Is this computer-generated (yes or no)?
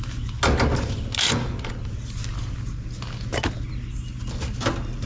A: no